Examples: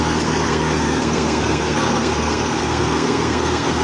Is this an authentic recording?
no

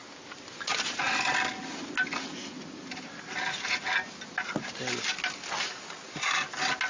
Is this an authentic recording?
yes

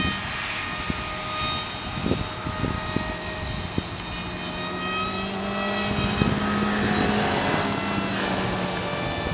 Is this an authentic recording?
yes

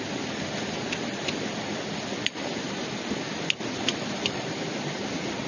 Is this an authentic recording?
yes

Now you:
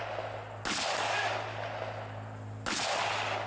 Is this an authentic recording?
yes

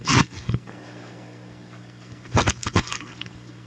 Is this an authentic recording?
no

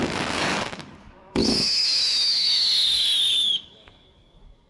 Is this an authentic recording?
no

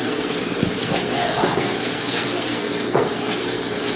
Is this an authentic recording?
no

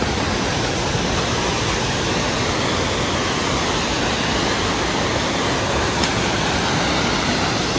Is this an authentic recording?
yes